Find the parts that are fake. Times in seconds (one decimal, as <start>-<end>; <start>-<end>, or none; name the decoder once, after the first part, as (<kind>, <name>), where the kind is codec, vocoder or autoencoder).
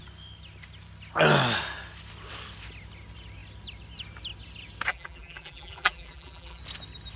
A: 4.9-6.6 (vocoder, BigVGAN v2)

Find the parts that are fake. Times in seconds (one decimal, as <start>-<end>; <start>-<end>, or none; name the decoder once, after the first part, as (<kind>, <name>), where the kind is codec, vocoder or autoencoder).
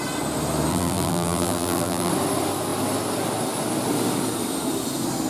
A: 0.7-2.1 (vocoder, BigVGAN v2)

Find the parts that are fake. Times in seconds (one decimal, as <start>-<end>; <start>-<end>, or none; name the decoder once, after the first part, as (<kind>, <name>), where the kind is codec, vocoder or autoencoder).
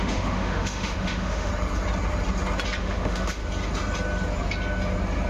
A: 0.0-1.5 (autoencoder, DAC-VAE); 2.8-3.4